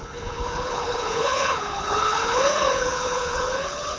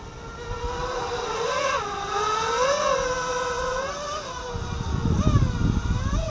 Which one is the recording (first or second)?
second